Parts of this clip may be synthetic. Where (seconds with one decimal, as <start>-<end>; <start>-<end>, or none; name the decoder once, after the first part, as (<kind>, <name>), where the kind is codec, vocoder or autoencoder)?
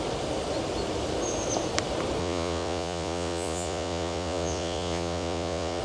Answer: 2.2-5.8 (vocoder, Vocos)